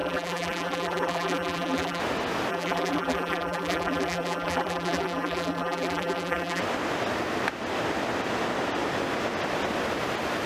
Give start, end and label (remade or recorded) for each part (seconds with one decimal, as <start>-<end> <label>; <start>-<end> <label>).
0.0-2.0 remade; 2.0-2.5 recorded; 2.5-6.6 remade; 6.6-10.5 recorded